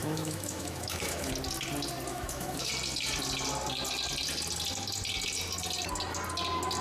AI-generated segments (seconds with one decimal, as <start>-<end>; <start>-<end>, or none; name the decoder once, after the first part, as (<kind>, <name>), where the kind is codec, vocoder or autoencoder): 0.0-1.3 (autoencoder, DAC-VAE); 2.1-2.7

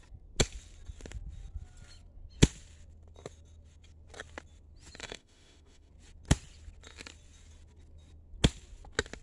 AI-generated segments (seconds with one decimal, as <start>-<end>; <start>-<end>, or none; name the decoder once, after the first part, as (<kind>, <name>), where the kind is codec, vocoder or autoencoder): 5.0-5.9 (autoencoder, DAC-VAE)

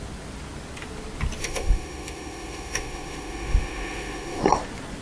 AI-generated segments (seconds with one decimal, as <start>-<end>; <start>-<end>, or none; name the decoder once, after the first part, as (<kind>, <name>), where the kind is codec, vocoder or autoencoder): 1.4-4.4 (autoencoder, DAC-VAE)

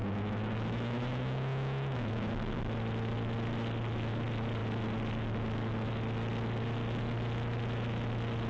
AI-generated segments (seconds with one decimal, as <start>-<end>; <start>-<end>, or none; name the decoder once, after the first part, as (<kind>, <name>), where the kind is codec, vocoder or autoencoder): 0.0-2.6 (autoencoder, DAC-VAE)

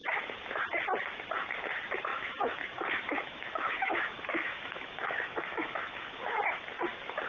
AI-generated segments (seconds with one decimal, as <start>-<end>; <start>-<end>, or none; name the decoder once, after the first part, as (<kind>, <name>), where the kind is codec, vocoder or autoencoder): 2.1-6.4 (autoencoder, DAC-VAE)